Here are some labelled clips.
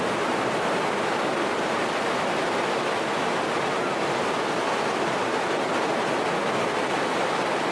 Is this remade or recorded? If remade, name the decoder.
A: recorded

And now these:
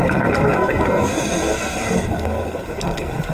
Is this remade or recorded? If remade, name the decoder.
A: remade, codec, SNAC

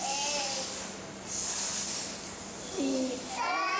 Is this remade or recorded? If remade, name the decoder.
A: recorded